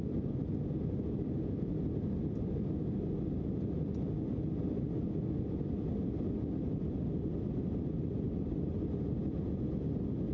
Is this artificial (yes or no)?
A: no